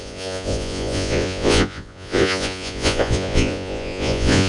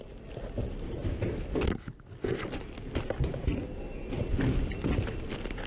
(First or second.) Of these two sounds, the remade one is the first